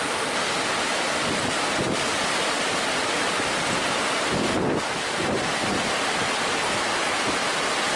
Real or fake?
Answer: real